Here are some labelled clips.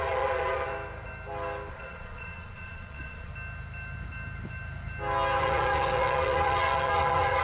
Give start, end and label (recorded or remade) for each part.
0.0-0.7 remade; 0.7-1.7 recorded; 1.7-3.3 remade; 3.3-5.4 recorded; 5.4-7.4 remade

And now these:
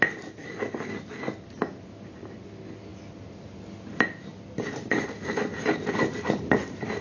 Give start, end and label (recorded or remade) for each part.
0.0-7.0 recorded

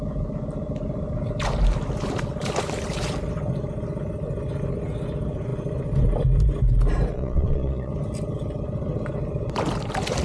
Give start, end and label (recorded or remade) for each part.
0.0-7.1 recorded; 7.1-7.9 remade; 7.9-10.2 recorded

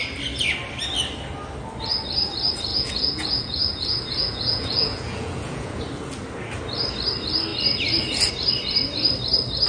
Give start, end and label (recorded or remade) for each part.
0.0-2.7 recorded; 2.7-5.8 remade; 5.8-9.7 recorded

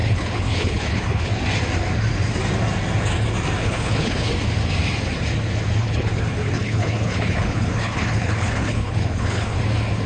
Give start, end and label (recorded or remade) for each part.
0.0-1.3 remade; 1.3-3.6 recorded; 3.6-4.3 remade; 4.3-5.8 recorded; 5.8-9.6 remade; 9.6-10.1 recorded